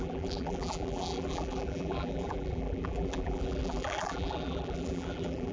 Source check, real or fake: fake